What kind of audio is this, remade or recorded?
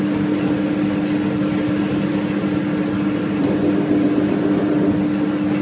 recorded